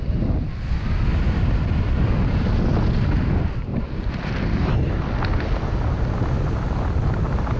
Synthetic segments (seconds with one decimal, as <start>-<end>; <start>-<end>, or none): 3.7-4.9

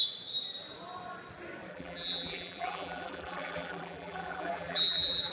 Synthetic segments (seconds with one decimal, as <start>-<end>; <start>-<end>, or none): 1.7-5.3

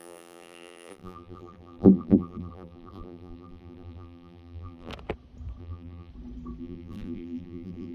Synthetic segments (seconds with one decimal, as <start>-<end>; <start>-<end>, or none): 0.0-4.9; 5.6-6.1; 6.6-7.9

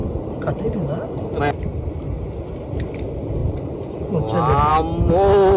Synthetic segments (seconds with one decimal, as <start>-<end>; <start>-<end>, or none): 0.0-1.4; 3.4-4.1

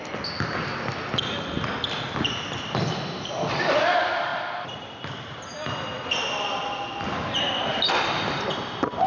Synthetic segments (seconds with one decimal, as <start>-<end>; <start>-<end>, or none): none

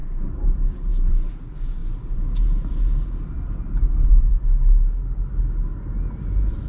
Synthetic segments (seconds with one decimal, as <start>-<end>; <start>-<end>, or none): 0.0-1.3; 1.8-4.1